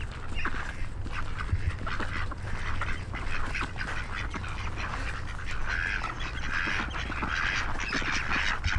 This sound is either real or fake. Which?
real